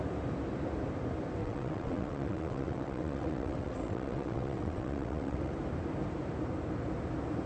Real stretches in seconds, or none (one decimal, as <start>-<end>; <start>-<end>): 0.0-1.4; 5.5-7.5